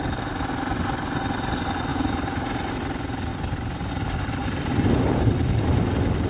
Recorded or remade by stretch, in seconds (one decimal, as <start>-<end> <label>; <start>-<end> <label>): 0.0-1.9 recorded; 1.9-2.7 remade; 2.7-3.3 recorded; 3.3-3.9 remade; 3.9-4.4 recorded; 4.4-5.3 remade; 5.3-6.3 recorded